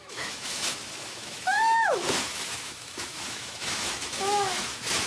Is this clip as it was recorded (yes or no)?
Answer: no